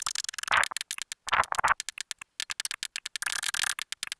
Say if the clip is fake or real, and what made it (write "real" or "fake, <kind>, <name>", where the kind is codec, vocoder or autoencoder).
real